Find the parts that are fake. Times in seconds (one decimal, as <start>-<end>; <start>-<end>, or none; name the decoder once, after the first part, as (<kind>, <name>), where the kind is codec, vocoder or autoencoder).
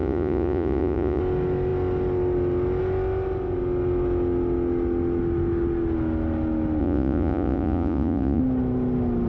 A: 0.0-1.2 (vocoder, Vocos); 6.8-8.4